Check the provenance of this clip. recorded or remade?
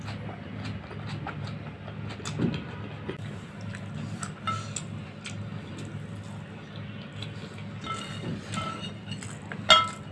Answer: recorded